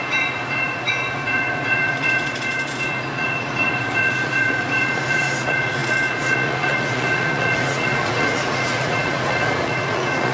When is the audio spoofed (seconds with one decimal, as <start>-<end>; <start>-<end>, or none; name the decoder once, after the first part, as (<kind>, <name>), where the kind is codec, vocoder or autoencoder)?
0.0-10.3 (vocoder, Vocos)